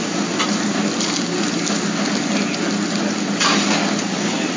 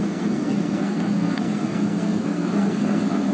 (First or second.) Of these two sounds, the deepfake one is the second